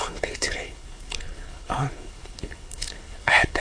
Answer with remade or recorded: remade